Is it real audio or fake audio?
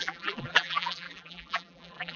fake